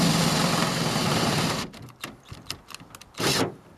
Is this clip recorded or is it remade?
recorded